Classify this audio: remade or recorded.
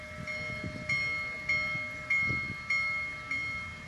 recorded